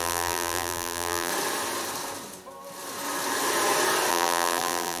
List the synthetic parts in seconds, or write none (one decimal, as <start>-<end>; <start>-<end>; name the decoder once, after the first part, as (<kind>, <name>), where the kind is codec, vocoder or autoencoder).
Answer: 0.0-1.3 (vocoder, BigVGAN v2); 4.1-5.0